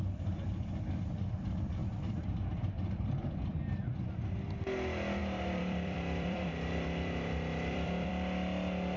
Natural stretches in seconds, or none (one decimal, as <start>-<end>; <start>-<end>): 0.0-1.8; 4.2-5.2; 8.1-9.0